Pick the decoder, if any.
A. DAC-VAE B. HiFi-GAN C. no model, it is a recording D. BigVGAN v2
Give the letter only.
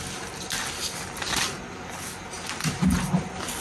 C